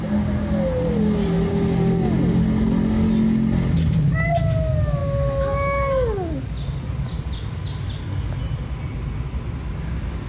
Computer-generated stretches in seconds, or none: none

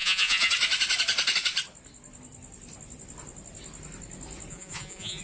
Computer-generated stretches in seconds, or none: 0.0-0.5 (vocoder, Vocos); 4.5-5.2

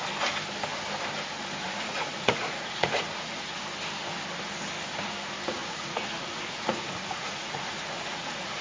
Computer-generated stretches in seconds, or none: 1.6-3.6 (vocoder, Vocos); 5.6-8.6

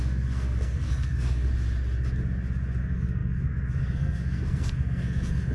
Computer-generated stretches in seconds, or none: 0.0-1.5 (codec, SNAC); 2.8-5.5

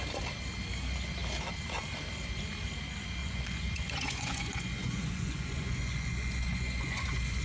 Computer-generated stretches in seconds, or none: 3.2-7.4 (vocoder, Vocos)

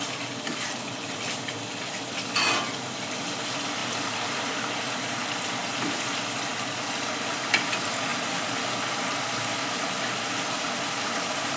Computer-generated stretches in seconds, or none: none

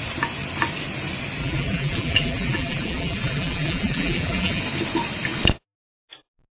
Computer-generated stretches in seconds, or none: 1.4-4.6 (vocoder, BigVGAN v2)

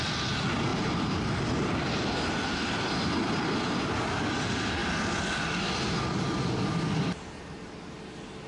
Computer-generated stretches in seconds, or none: none